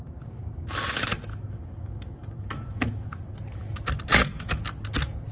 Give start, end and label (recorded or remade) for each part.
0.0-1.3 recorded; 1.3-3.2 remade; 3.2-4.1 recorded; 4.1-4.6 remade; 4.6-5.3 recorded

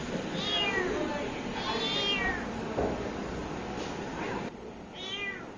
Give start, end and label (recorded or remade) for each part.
0.0-5.6 recorded

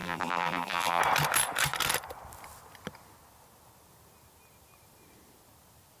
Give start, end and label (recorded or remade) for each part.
0.0-1.0 remade; 1.0-6.0 recorded

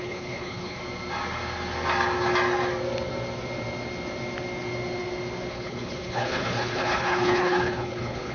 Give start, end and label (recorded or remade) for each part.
0.0-0.8 remade; 0.8-5.5 recorded; 5.5-8.3 remade

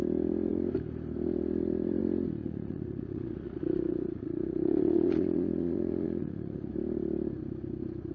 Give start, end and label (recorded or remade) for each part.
0.0-2.4 recorded; 2.4-6.7 remade; 6.7-8.1 recorded

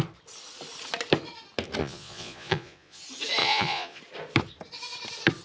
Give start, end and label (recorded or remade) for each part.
0.0-1.8 recorded; 1.8-3.0 remade; 3.0-3.4 recorded; 3.4-4.0 remade; 4.0-5.4 recorded